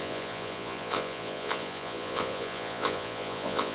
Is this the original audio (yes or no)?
no